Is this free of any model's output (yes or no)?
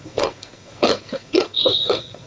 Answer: no